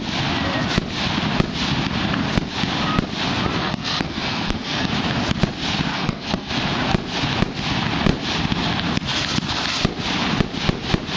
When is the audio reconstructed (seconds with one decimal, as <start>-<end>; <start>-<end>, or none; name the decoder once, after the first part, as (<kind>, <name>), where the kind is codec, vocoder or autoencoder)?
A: 3.6-4.9 (codec, SNAC); 5.9-6.5